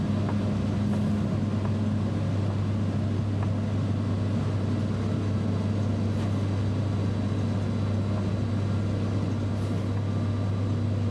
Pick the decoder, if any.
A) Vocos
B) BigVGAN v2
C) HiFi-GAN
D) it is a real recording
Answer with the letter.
D